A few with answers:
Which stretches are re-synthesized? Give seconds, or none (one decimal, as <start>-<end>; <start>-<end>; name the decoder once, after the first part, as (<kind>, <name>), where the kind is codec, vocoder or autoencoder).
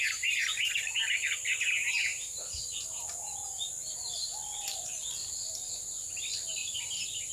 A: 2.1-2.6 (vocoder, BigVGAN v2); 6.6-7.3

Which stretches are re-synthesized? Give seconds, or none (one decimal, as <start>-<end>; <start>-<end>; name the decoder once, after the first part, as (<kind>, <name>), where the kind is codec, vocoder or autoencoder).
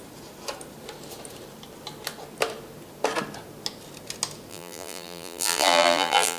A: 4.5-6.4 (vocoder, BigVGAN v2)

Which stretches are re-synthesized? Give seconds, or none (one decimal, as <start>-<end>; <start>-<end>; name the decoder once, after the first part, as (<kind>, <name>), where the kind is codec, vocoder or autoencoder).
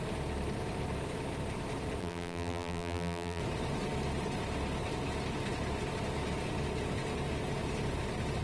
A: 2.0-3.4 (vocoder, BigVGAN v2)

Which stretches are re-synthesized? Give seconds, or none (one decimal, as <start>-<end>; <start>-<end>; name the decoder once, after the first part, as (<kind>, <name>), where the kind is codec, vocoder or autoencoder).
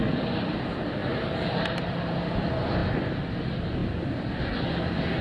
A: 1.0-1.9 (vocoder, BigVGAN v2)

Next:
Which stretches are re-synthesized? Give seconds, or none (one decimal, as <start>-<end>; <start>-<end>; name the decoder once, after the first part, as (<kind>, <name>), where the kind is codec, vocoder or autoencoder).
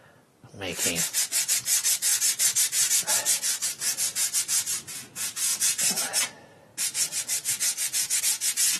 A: 5.5-6.2 (vocoder, BigVGAN v2)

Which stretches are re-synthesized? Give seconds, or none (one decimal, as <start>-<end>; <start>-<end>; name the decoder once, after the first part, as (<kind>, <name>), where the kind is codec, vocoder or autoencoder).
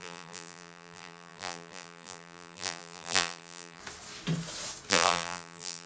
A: 0.0-3.8 (vocoder, BigVGAN v2); 4.9-5.9